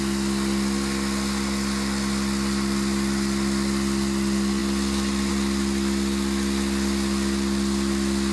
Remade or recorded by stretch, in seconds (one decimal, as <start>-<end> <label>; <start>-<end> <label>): 0.0-8.3 recorded

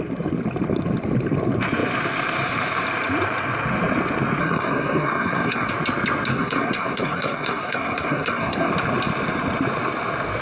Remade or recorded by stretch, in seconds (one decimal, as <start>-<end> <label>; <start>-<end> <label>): 0.0-4.4 recorded; 4.4-5.7 remade; 5.7-6.3 recorded; 6.3-8.7 remade; 8.7-10.4 recorded

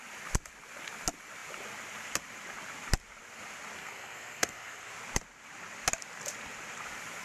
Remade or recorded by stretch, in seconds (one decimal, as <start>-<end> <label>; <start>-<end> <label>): 0.0-3.8 recorded; 3.8-4.9 remade; 4.9-7.2 recorded

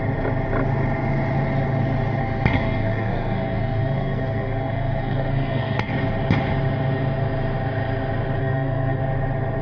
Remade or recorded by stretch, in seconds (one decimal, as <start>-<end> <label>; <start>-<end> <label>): 0.0-2.2 recorded; 2.2-5.9 remade; 5.9-8.4 recorded; 8.4-9.0 remade; 9.0-9.6 recorded

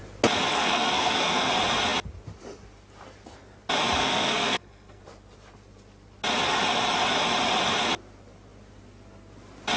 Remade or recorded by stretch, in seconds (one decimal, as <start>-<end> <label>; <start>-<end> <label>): 0.0-0.5 recorded; 0.5-1.5 remade; 1.5-4.0 recorded; 4.0-5.0 remade; 5.0-9.8 recorded